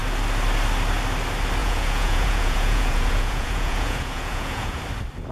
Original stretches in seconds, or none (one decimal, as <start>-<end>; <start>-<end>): 0.0-1.6; 4.8-5.3

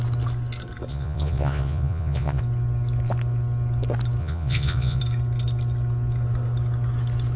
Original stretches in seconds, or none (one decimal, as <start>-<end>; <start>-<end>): 0.0-0.9; 2.4-4.2; 5.0-7.4